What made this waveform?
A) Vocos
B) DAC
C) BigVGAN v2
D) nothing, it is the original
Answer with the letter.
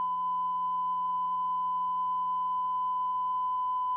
D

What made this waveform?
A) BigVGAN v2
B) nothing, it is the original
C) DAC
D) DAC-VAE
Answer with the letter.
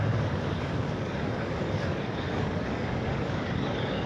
C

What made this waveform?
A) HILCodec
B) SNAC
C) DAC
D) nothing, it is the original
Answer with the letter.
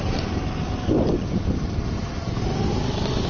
D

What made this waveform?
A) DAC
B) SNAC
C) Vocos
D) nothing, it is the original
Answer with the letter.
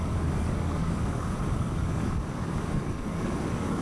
A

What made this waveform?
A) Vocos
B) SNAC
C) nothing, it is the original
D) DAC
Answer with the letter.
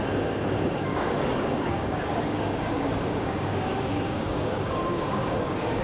D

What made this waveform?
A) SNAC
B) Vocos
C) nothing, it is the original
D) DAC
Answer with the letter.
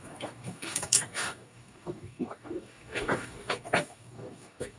D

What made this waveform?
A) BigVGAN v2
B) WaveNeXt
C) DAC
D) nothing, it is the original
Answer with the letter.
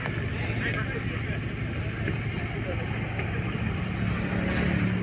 D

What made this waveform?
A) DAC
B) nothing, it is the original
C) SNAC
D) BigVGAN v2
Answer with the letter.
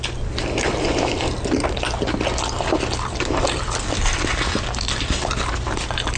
B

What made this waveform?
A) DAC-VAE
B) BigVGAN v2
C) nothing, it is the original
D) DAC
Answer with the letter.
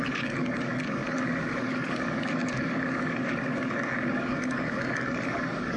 D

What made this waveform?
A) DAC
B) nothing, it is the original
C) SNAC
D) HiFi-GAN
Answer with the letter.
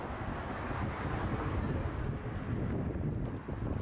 B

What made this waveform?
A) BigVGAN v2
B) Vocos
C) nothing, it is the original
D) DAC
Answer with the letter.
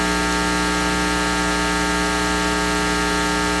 C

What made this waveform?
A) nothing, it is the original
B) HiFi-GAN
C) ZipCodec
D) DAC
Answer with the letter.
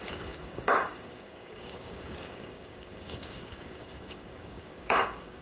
D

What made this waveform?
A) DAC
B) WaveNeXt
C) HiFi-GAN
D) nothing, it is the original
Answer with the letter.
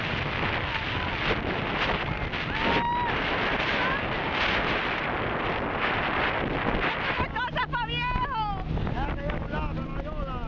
D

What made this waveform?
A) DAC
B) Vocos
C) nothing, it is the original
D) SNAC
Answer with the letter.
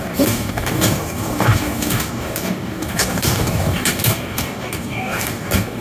A